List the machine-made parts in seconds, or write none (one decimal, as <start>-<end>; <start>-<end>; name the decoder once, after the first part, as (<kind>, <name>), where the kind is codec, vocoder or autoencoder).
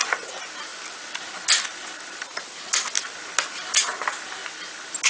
none